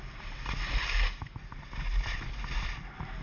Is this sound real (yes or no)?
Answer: yes